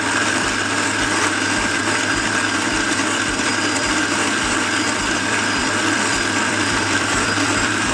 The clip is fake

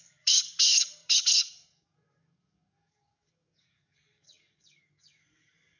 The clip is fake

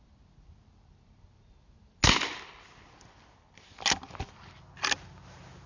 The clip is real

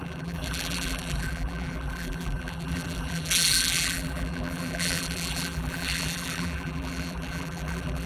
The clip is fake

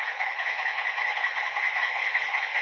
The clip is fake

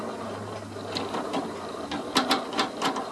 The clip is real